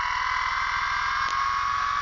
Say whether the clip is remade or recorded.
recorded